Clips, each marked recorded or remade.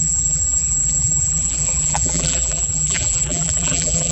remade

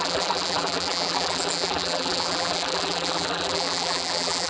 remade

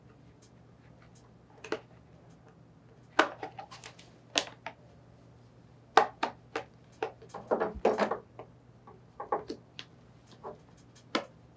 recorded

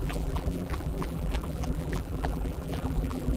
remade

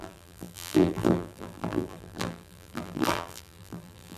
remade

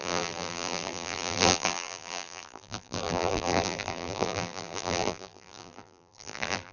remade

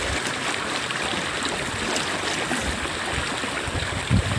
remade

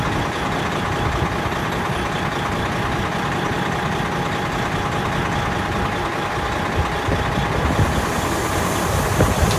recorded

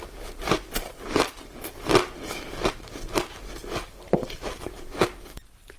recorded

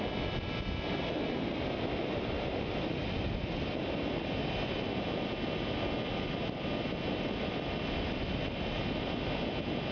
recorded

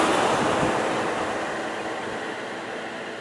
recorded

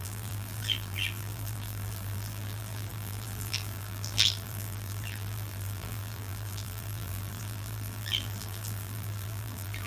remade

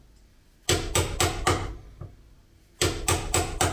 recorded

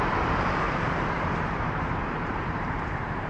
remade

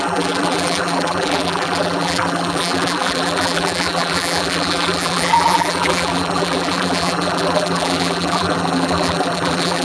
remade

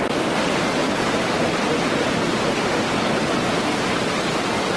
remade